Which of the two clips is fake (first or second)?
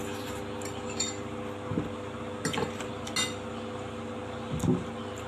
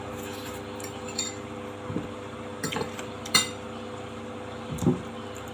second